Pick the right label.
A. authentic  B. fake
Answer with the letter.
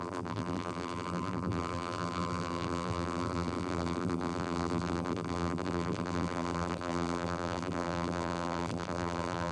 B